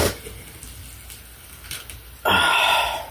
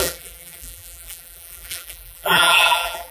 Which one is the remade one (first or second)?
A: second